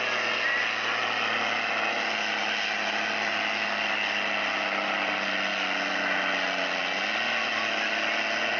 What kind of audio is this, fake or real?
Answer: real